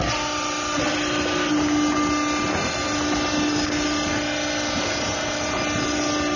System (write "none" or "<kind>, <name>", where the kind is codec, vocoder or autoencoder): none